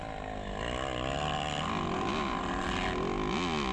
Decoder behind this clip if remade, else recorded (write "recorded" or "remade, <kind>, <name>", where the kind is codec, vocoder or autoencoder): recorded